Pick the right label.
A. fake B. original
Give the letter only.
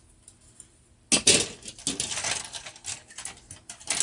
B